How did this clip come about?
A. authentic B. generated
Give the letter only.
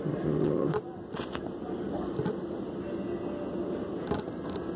A